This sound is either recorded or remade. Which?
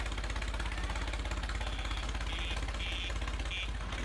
recorded